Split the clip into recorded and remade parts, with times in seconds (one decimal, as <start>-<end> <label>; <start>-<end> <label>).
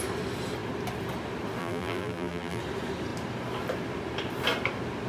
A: 0.0-1.6 recorded; 1.6-2.6 remade; 2.6-5.1 recorded